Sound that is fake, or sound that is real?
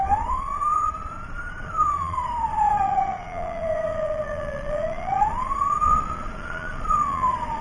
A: fake